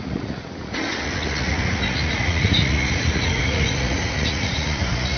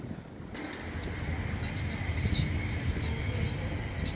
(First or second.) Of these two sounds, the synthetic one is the first